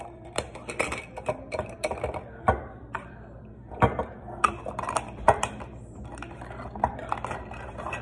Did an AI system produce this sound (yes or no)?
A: yes